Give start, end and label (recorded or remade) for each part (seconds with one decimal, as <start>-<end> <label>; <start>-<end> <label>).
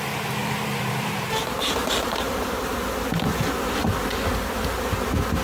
0.0-0.4 recorded; 0.4-2.6 remade; 2.6-5.4 recorded